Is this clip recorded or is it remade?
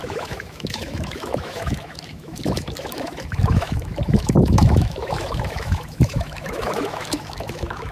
remade